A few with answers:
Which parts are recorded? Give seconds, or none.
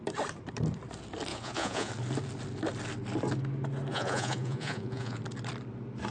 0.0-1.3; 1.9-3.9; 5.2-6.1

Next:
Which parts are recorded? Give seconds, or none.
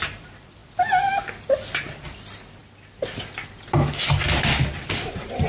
0.0-5.5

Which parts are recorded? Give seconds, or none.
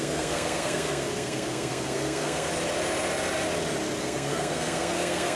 2.5-4.0